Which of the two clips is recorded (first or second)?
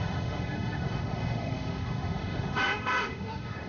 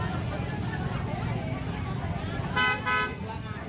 second